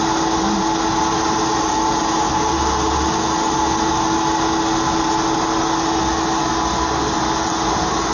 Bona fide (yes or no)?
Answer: yes